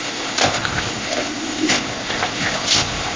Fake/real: fake